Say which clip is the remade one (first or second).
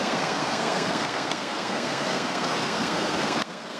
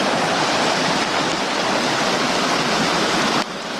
first